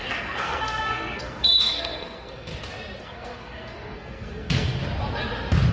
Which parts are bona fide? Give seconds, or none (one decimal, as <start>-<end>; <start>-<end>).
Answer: 2.5-3.0; 4.8-5.7